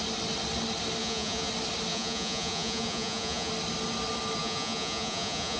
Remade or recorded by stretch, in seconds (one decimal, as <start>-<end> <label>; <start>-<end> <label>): 0.0-1.0 recorded; 1.0-1.5 remade; 1.5-1.9 recorded; 1.9-3.5 remade; 3.5-4.4 recorded; 4.4-5.6 remade